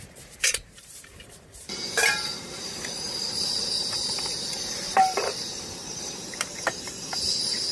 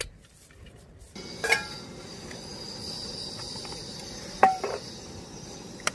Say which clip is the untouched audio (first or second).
second